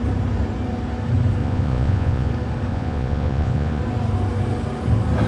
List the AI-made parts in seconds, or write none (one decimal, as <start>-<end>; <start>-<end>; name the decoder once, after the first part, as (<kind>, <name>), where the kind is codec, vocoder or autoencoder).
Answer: 1.4-2.3 (vocoder, Vocos); 2.7-3.8